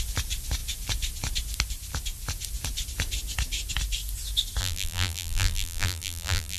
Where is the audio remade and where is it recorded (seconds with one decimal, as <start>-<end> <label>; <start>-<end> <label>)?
0.0-4.6 recorded; 4.6-6.6 remade